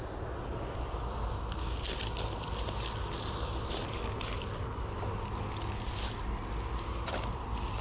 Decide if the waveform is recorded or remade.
recorded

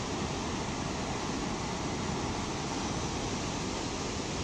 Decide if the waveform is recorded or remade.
recorded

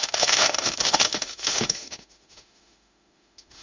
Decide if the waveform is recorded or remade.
remade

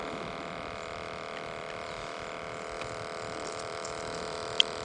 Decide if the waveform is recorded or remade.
remade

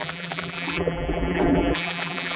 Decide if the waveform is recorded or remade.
remade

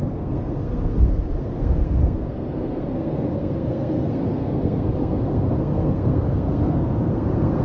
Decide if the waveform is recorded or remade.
remade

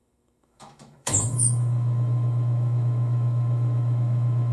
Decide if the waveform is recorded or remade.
remade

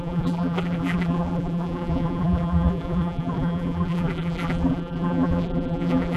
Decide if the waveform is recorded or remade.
remade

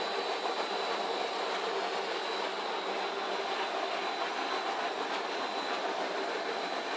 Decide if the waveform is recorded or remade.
recorded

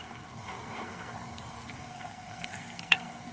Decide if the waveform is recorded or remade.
remade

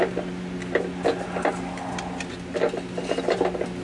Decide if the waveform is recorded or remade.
recorded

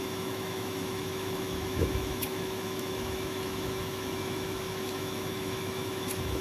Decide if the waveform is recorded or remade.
remade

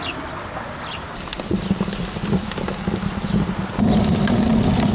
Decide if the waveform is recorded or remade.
recorded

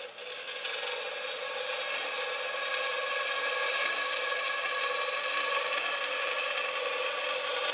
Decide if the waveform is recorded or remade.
recorded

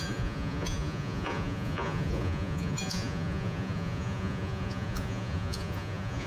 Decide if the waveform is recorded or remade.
remade